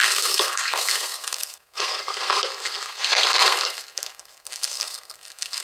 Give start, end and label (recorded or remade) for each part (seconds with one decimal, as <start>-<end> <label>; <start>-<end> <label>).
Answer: 0.0-5.6 remade